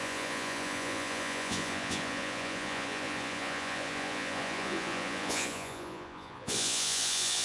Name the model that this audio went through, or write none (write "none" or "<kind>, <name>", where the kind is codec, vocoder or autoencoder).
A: vocoder, Vocos